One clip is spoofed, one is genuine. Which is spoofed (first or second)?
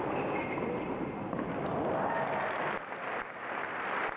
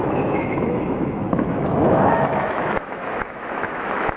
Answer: second